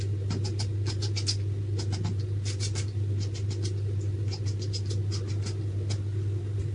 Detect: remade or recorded recorded